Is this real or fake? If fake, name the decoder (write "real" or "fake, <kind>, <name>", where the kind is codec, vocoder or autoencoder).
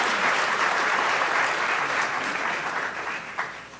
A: fake, vocoder, BigVGAN v2